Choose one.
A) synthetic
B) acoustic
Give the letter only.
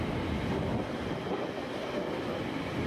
B